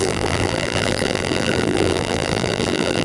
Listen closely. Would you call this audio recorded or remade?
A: remade